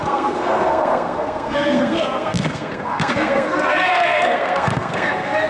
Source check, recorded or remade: remade